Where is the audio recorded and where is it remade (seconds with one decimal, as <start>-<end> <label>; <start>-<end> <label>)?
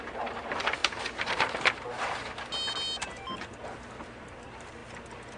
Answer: 0.0-0.8 remade; 0.8-4.0 recorded; 4.0-4.8 remade; 4.8-5.4 recorded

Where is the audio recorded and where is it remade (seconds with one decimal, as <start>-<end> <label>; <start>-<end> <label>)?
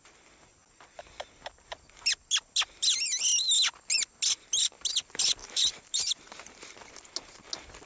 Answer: 0.0-5.4 recorded; 5.4-6.9 remade; 6.9-7.9 recorded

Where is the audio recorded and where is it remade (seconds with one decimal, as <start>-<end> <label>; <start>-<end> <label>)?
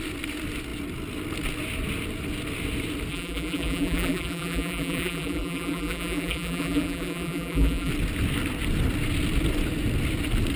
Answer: 0.0-3.1 recorded; 3.1-7.9 remade; 7.9-10.6 recorded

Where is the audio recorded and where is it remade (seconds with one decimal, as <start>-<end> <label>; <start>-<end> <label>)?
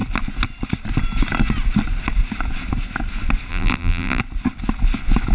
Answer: 0.0-3.5 recorded; 3.5-4.2 remade; 4.2-5.3 recorded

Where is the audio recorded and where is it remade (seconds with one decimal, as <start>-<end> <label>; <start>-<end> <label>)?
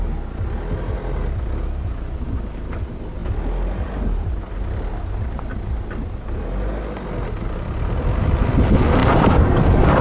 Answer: 0.0-9.0 recorded; 9.0-9.6 remade; 9.6-10.0 recorded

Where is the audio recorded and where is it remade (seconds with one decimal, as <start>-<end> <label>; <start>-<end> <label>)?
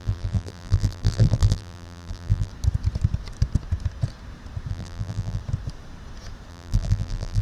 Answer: 0.0-2.5 remade; 2.5-4.7 recorded; 4.7-5.4 remade; 5.4-6.5 recorded; 6.5-7.4 remade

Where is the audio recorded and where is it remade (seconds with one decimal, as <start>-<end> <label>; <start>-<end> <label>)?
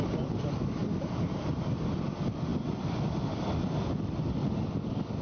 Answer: 0.0-2.5 recorded; 2.5-4.0 remade; 4.0-5.2 recorded